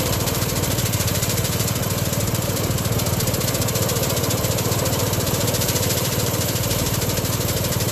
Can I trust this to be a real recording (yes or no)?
no